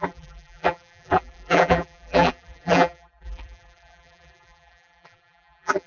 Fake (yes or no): yes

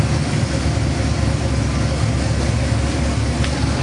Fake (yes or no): no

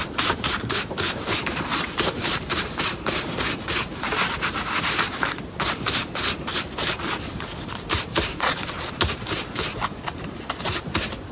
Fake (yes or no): yes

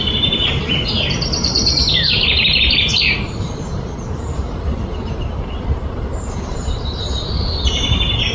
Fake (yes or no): yes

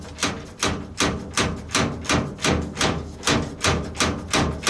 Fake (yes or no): no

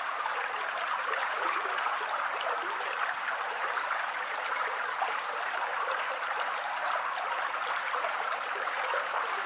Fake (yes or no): yes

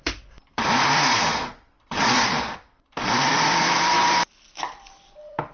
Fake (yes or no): yes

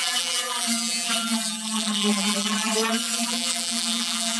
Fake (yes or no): yes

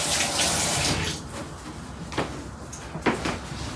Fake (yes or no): no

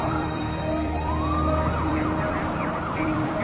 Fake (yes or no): yes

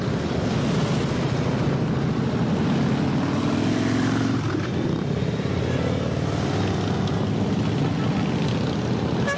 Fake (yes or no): no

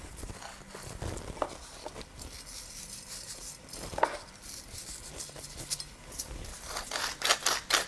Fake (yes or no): no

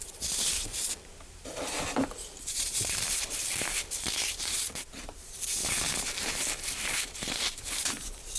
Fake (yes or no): yes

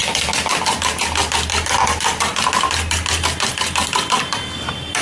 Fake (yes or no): no